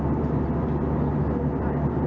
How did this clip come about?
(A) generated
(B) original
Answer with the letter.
B